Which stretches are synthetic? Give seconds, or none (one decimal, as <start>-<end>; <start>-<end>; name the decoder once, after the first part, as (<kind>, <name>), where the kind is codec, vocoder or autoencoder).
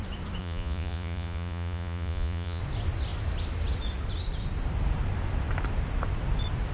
0.4-2.6 (vocoder, Vocos)